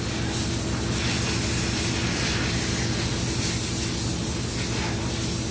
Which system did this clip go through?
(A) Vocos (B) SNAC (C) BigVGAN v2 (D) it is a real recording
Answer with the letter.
D